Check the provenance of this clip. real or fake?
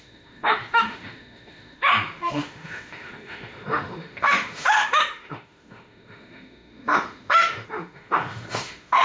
fake